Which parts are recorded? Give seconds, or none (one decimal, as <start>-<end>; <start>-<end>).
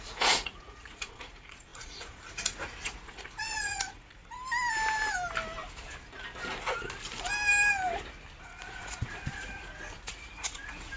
4.2-8.4